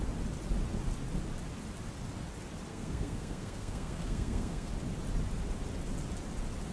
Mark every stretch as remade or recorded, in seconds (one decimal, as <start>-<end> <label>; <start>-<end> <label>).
0.0-2.7 recorded; 2.7-4.7 remade; 4.7-6.7 recorded